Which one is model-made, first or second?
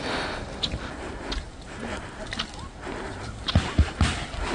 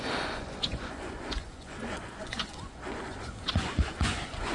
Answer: second